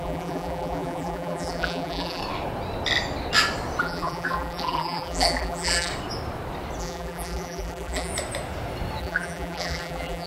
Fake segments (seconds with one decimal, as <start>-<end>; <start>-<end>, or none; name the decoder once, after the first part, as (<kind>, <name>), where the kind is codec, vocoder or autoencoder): 0.0-2.2 (vocoder, BigVGAN v2); 3.8-5.9; 6.8-8.1; 9.0-10.3